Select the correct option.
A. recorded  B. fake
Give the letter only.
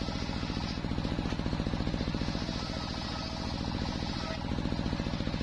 A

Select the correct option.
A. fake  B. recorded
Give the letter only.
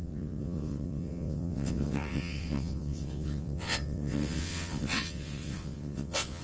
A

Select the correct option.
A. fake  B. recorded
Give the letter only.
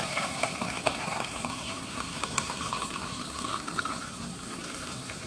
A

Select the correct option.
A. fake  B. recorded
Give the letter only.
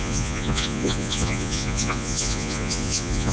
A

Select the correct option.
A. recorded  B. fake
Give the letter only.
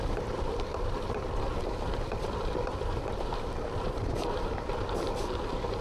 B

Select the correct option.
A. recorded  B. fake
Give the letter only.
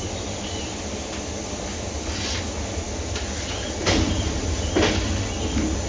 A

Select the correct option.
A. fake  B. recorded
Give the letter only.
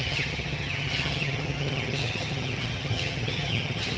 A